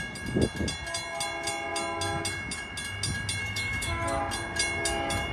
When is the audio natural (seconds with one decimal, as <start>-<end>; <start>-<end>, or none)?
0.0-3.4; 4.2-5.3